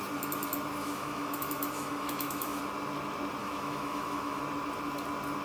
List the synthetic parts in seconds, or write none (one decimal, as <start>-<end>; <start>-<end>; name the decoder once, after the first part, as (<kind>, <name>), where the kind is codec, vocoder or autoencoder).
0.8-2.6 (autoencoder, DAC-VAE); 3.4-4.4